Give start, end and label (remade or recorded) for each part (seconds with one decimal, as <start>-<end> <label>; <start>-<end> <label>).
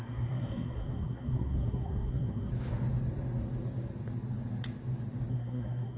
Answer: 0.0-2.5 remade; 2.5-5.3 recorded; 5.3-6.0 remade